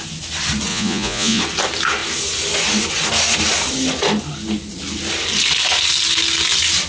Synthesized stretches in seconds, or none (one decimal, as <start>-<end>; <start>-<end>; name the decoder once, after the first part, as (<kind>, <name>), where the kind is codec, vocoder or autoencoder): 0.7-1.4 (vocoder, Vocos)